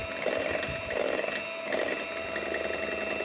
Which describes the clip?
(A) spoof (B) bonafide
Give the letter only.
B